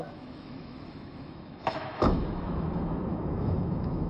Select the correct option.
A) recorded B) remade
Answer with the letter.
B